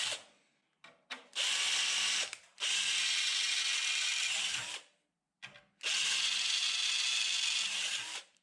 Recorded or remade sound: recorded